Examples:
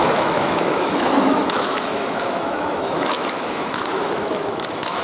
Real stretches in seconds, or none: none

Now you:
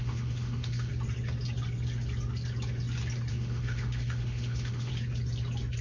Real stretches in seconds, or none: 0.9-3.3; 4.9-5.8

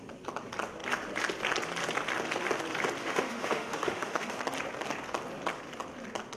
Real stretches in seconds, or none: 0.0-3.0; 4.4-6.4

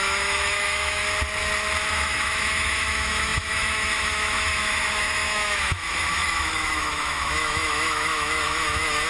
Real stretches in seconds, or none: 1.0-1.9